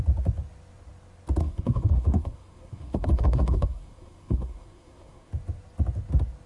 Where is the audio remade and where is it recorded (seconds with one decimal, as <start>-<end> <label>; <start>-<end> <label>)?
0.0-1.4 recorded; 1.4-5.3 remade; 5.3-6.5 recorded